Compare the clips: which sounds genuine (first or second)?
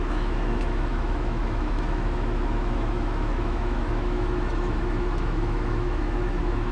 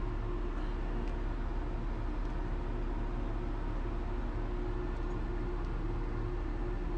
second